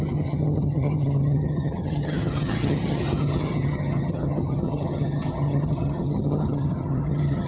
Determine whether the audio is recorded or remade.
remade